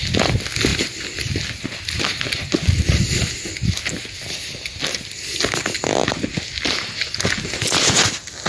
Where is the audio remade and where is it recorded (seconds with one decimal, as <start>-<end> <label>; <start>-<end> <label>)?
0.0-8.5 recorded